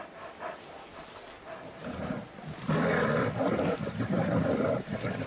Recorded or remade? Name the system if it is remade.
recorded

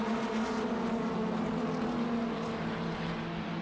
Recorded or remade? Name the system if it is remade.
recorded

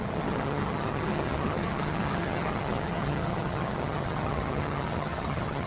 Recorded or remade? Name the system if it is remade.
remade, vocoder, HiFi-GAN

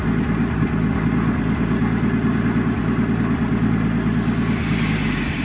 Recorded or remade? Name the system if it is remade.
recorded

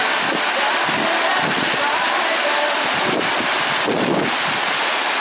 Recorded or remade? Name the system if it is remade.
recorded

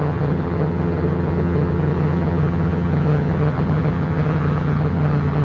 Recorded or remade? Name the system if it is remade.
remade, vocoder, HiFi-GAN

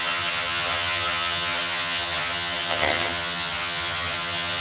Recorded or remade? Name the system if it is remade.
remade, vocoder, HiFi-GAN